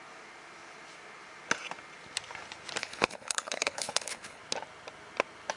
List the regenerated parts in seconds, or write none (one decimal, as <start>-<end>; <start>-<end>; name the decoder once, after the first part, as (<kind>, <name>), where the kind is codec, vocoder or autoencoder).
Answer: 2.8-4.4 (codec, HILCodec)